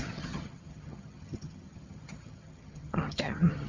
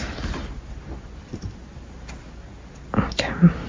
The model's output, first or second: first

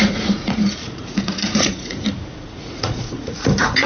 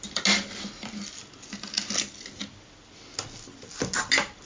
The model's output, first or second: first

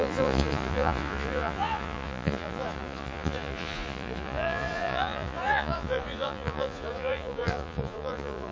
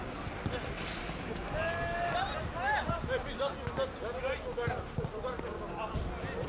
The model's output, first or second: first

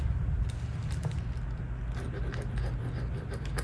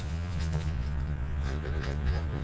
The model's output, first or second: second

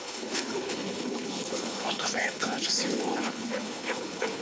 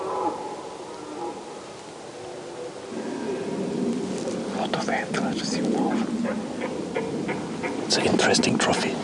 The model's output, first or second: first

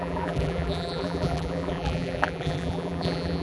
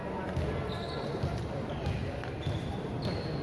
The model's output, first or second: first